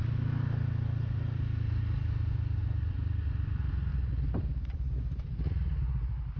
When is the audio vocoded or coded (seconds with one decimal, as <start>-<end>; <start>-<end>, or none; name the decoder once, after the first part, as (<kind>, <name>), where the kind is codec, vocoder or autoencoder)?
2.6-3.5 (vocoder, BigVGAN v2); 3.9-5.3